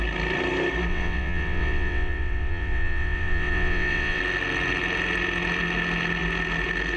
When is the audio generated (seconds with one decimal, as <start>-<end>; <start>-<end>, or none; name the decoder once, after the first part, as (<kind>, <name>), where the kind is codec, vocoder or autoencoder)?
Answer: 0.9-4.2 (vocoder, WaveNeXt)